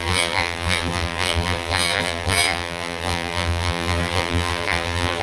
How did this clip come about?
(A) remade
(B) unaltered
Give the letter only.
A